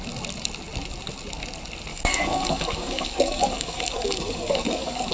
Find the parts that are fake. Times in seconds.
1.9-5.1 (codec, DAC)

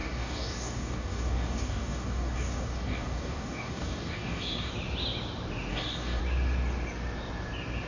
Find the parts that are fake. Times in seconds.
0.0-4.7 (codec, DAC); 5.7-6.2

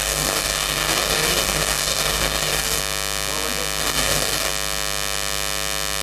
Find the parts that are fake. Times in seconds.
0.0-2.8 (codec, DAC); 3.8-4.5

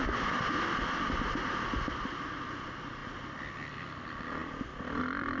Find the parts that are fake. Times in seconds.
none